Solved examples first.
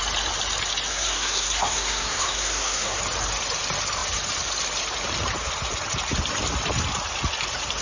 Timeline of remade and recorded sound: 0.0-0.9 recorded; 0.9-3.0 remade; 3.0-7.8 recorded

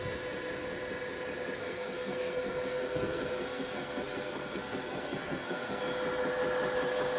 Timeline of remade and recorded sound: 0.0-1.6 recorded; 1.6-5.8 remade; 5.8-7.2 recorded

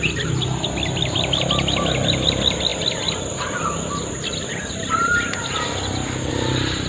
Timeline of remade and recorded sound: 0.0-6.9 recorded

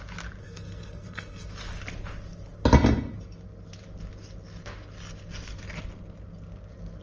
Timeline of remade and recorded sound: 0.0-0.4 recorded; 0.4-1.5 remade; 1.5-7.0 recorded

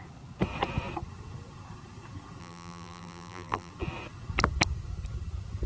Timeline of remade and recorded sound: 0.0-2.4 recorded; 2.4-3.7 remade; 3.7-5.7 recorded